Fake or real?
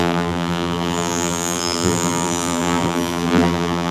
fake